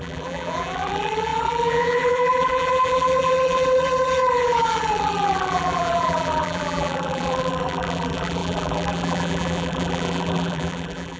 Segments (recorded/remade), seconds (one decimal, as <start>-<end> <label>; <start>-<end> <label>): 0.0-11.2 remade